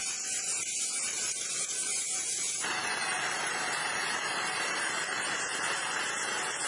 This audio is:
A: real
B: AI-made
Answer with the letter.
B